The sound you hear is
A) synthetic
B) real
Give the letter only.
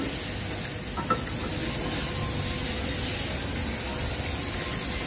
B